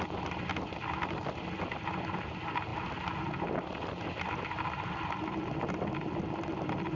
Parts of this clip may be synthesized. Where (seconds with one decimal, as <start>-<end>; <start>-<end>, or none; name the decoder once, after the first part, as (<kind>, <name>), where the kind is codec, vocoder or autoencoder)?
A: none